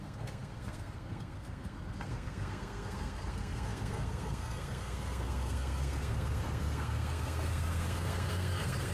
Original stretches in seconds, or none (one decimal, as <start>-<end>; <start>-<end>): none